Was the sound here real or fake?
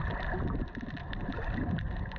real